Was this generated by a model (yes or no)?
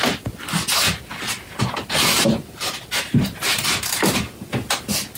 no